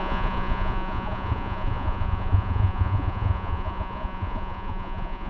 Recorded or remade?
remade